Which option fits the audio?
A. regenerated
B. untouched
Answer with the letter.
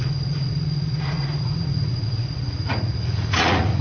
A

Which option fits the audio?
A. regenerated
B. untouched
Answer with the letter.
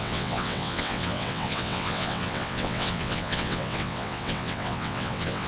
A